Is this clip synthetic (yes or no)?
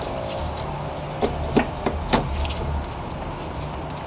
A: no